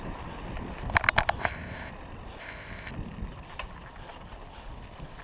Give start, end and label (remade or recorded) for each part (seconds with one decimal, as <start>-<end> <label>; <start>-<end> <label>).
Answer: 0.0-1.4 recorded; 1.4-1.9 remade; 1.9-2.4 recorded; 2.4-2.9 remade; 2.9-5.2 recorded